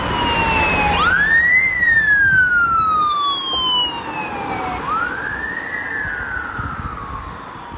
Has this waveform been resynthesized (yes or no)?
no